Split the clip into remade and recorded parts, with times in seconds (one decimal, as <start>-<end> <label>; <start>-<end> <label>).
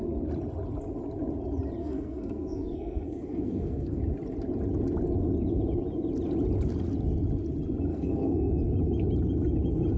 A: 0.0-1.8 recorded; 1.8-4.0 remade; 4.0-7.9 recorded; 7.9-8.5 remade; 8.5-10.0 recorded